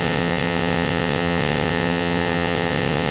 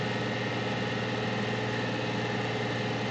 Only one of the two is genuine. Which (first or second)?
second